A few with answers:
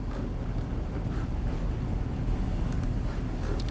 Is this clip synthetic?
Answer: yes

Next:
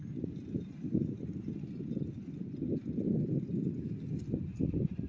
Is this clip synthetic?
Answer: no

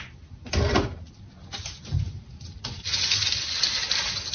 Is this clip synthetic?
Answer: no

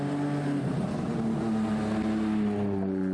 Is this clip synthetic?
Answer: no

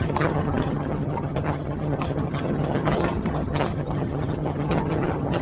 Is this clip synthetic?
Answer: yes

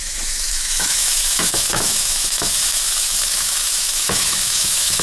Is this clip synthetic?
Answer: yes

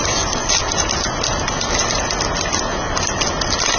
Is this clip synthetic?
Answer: no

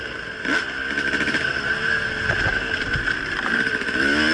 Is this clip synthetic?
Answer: no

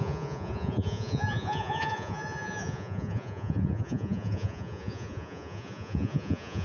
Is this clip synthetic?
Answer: yes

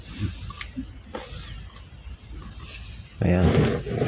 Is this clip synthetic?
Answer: no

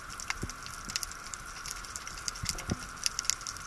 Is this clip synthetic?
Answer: no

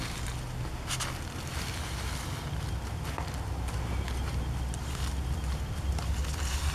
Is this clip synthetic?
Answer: no